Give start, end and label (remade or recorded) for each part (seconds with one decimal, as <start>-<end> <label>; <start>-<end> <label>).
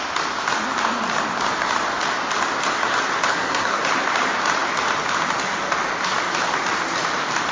0.0-3.3 recorded; 3.3-3.8 remade; 3.8-7.5 recorded